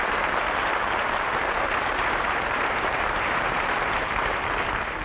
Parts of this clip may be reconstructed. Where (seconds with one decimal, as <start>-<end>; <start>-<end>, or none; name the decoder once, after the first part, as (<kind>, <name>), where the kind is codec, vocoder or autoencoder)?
1.0-4.0 (vocoder, BigVGAN v2)

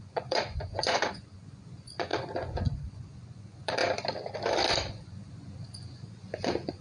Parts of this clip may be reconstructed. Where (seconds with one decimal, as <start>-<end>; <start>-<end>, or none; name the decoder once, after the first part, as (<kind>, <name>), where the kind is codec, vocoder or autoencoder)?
0.0-3.8 (vocoder, Vocos); 4.9-6.8

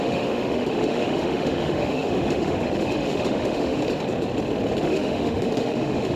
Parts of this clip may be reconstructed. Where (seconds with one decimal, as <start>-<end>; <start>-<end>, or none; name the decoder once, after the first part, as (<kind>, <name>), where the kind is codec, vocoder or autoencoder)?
0.0-3.8 (autoencoder, DAC-VAE); 4.8-6.2

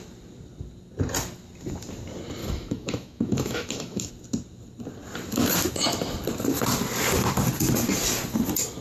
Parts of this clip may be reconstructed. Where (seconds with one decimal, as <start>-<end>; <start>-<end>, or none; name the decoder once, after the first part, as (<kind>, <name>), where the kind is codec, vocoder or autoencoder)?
2.4-4.1 (autoencoder, DAC-VAE)

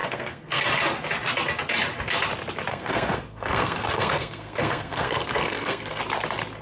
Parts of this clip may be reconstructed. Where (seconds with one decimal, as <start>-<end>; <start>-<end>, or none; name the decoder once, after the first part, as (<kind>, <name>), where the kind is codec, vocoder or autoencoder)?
0.0-0.6 (codec, SNAC); 2.7-6.0

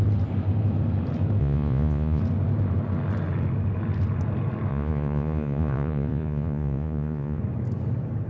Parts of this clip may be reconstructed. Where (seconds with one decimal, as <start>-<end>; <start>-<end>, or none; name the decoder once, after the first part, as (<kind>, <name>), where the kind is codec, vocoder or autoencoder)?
1.4-2.2 (vocoder, Vocos); 4.7-7.4

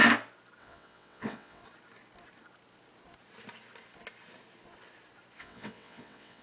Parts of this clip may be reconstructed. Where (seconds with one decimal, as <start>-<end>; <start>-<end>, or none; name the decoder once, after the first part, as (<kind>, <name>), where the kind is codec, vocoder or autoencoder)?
0.6-1.6 (vocoder, WaveNeXt); 5.4-6.4